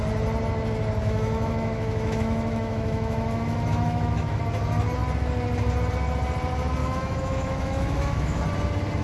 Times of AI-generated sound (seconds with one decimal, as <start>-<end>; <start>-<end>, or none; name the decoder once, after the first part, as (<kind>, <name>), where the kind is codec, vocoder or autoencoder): 1.0-4.4 (autoencoder, DAC-VAE); 6.8-8.4